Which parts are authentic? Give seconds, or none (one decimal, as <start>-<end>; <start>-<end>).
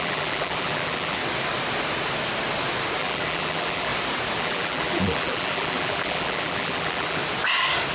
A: 1.2-3.0; 3.9-4.4; 7.2-7.9